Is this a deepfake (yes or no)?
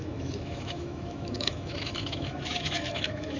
yes